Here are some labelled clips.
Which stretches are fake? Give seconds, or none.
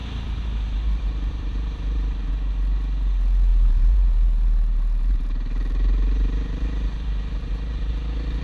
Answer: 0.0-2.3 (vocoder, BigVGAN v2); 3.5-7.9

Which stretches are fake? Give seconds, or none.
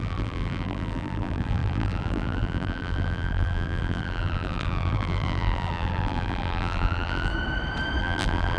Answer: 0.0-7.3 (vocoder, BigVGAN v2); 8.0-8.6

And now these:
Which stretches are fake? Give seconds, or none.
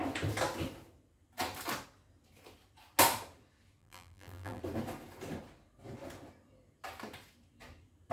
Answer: 3.8-4.6 (vocoder, BigVGAN v2)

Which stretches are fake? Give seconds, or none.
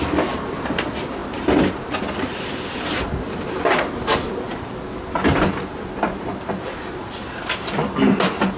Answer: 1.2-4.7 (vocoder, BigVGAN v2)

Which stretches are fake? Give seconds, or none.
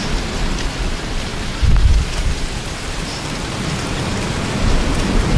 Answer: 1.3-4.0 (vocoder, BigVGAN v2)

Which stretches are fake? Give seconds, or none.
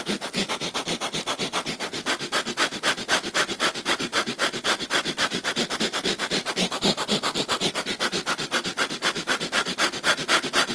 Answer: none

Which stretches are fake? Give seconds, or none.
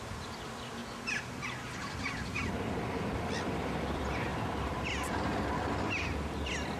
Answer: 0.0-0.8 (vocoder, BigVGAN v2); 2.5-6.8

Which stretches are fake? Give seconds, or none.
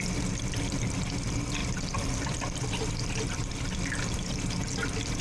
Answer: 1.6-4.0 (vocoder, BigVGAN v2)